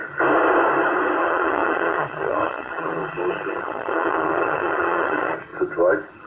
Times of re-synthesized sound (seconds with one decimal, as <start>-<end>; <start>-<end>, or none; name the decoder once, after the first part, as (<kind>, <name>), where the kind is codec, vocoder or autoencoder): 1.2-3.0 (vocoder, Vocos); 3.6-5.5